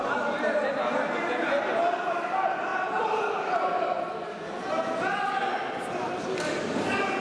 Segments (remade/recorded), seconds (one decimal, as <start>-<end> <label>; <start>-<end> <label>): 0.0-7.2 recorded